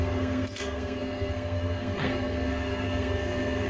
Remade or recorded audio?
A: remade